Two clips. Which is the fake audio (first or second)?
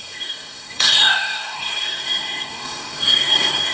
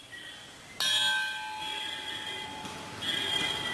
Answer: first